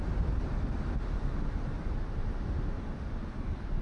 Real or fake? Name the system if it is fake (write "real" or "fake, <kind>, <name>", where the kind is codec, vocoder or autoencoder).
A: real